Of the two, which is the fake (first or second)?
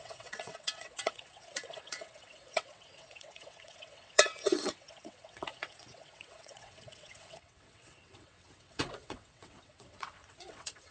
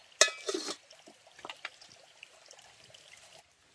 first